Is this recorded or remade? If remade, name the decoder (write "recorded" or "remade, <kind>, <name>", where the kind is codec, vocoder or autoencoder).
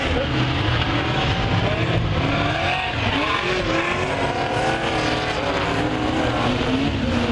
recorded